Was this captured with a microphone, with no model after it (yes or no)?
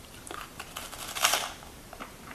no